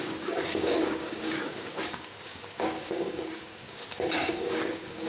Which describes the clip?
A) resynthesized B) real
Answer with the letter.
A